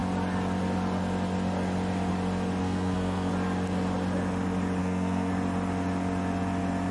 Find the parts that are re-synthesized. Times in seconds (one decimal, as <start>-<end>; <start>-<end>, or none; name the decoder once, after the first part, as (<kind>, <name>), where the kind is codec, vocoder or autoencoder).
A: 2.6-3.3 (codec, SNAC); 4.8-5.3